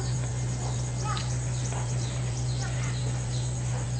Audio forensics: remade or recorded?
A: recorded